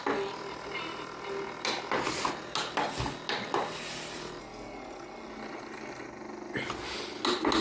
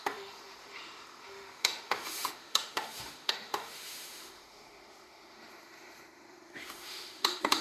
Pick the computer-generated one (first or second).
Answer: second